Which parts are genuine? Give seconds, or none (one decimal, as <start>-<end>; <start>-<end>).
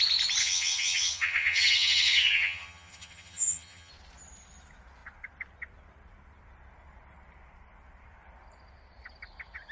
0.0-0.4; 3.9-9.7